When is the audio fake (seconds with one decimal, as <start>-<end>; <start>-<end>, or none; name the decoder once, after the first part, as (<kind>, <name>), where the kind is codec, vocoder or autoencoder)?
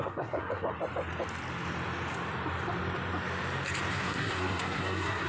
0.0-0.7 (codec, SNAC); 3.9-5.3